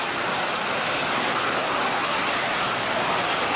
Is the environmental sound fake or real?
real